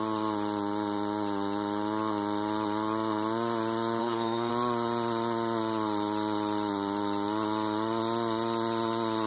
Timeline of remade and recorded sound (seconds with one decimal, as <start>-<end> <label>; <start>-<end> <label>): 0.0-4.0 recorded; 4.0-4.5 remade; 4.5-9.3 recorded